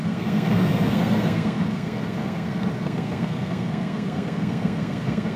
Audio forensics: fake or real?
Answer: fake